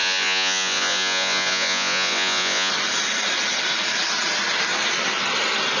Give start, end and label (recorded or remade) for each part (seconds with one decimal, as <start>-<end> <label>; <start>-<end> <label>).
0.0-2.7 remade; 2.7-5.8 recorded